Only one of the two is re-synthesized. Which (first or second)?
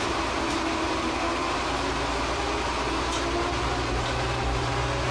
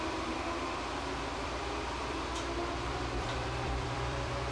second